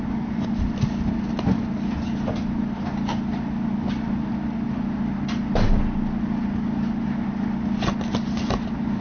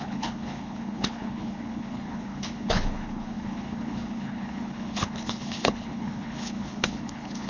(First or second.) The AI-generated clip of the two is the second